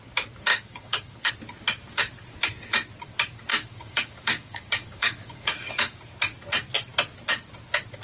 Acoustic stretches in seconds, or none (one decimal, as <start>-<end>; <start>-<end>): 0.0-0.5; 1.3-3.5; 6.0-8.0